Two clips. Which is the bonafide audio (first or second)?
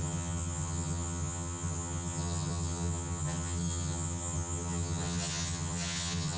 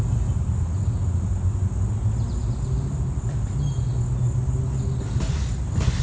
second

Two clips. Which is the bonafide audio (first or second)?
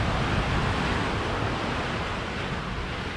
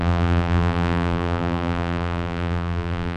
first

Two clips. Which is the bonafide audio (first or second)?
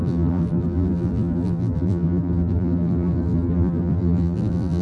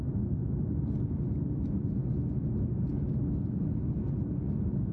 second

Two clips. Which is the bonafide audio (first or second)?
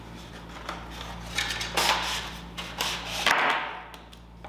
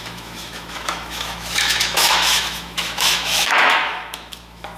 first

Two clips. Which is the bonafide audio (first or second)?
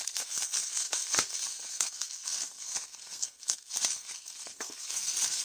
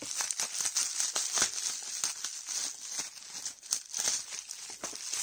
second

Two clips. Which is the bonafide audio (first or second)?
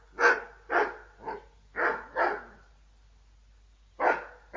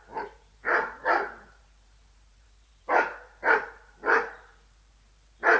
first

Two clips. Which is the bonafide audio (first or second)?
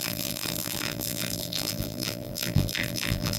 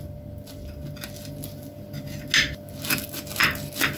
second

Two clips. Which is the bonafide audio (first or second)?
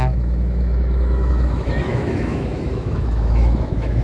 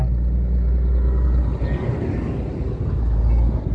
second